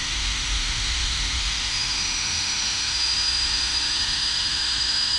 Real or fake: fake